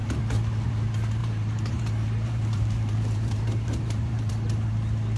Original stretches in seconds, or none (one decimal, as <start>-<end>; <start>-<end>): 0.7-1.2; 4.3-5.2